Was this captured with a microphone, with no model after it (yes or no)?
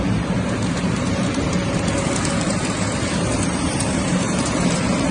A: no